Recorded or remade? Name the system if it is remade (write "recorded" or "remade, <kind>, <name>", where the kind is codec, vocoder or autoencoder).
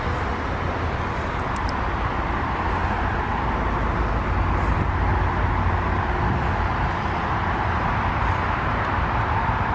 recorded